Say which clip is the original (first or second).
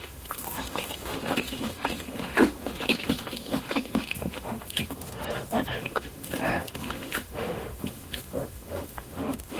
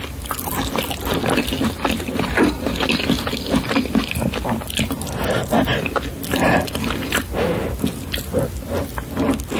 second